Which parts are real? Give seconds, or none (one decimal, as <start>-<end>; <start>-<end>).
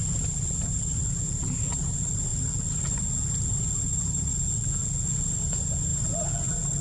0.0-6.8